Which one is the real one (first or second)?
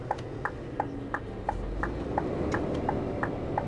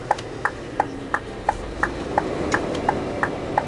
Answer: first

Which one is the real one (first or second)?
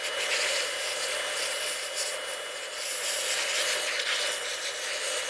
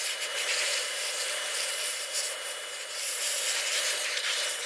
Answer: first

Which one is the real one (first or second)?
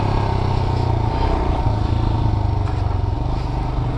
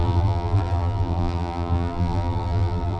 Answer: first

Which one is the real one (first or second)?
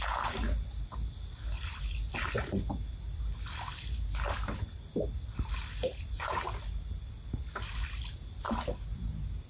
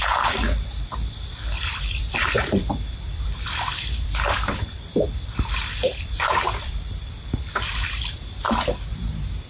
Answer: first